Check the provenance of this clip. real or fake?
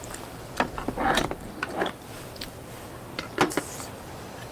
real